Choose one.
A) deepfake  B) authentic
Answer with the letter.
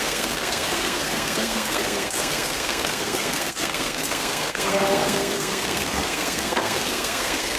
A